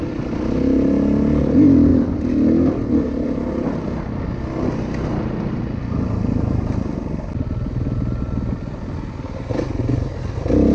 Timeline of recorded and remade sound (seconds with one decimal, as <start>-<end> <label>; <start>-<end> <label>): 0.0-10.7 recorded